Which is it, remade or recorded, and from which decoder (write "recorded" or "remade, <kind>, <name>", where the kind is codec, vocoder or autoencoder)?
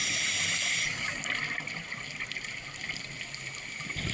recorded